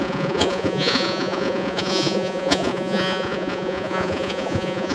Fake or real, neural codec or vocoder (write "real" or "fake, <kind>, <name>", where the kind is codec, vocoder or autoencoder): fake, vocoder, Vocos